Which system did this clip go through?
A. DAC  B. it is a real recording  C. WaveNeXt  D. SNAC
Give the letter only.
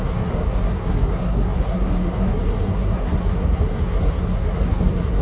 D